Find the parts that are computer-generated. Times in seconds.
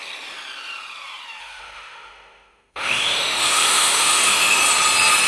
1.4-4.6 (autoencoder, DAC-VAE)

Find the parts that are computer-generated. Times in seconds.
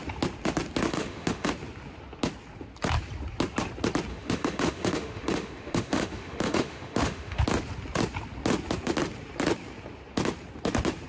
0.9-1.5 (autoencoder, DAC-VAE); 4.1-7.4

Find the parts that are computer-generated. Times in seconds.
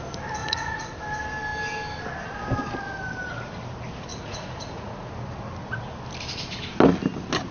0.4-1.0 (vocoder, Vocos); 4.1-5.1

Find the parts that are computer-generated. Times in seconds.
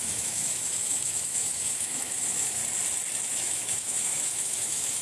0.0-2.6 (autoencoder, DAC-VAE); 3.3-5.0